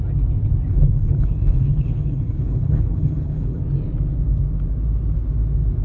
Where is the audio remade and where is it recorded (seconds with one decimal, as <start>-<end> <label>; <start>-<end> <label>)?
0.0-0.7 recorded; 0.7-3.6 remade; 3.6-5.8 recorded